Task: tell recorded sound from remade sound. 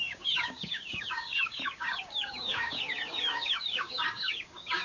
remade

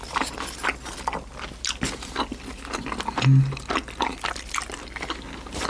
recorded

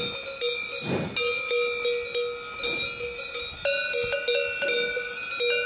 recorded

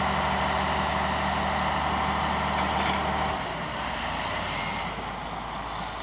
recorded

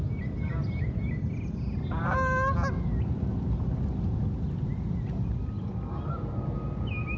recorded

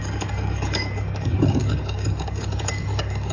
remade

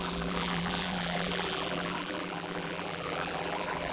remade